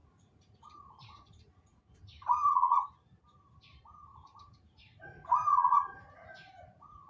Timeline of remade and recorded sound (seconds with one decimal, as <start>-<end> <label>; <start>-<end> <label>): 0.0-2.9 remade; 2.9-4.1 recorded; 4.1-7.1 remade